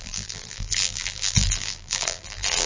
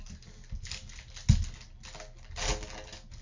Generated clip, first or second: first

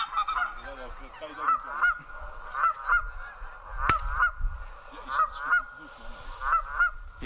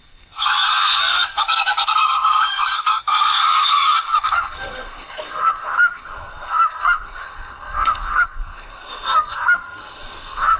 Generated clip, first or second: second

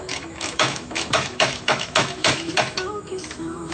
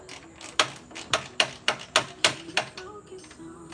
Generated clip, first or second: first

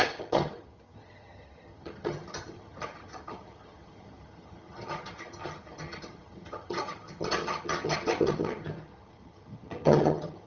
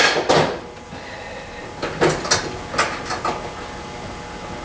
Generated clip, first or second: first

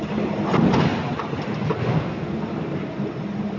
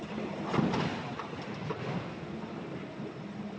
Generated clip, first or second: second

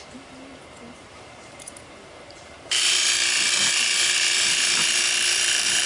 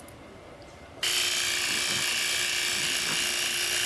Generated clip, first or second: first